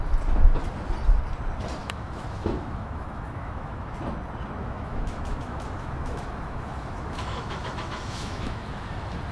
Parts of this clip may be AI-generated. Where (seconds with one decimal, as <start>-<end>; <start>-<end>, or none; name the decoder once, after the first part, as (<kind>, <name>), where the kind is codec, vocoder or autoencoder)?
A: 1.8-3.9 (autoencoder, DAC-VAE); 4.6-8.9